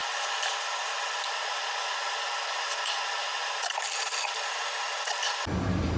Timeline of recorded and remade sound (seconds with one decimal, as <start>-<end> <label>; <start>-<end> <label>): 0.0-6.0 recorded